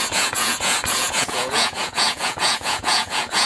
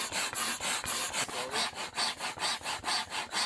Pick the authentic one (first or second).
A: second